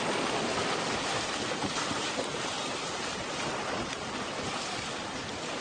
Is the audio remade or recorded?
recorded